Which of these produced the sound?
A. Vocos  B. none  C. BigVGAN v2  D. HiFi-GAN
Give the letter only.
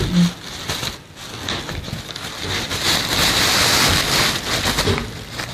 B